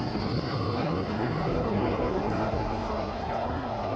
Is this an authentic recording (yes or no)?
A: no